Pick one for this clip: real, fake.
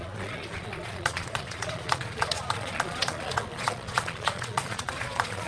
fake